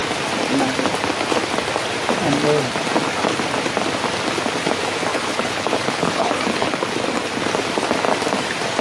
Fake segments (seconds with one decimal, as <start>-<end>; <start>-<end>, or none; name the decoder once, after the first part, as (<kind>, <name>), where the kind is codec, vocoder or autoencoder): 5.1-6.8 (codec, HILCodec)